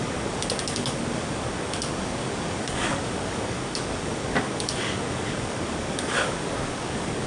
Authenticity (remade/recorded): remade